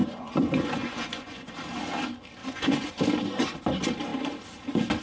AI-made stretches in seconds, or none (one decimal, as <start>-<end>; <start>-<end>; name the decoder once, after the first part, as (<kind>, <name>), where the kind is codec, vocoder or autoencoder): 0.0-1.5 (vocoder, Vocos); 2.4-2.9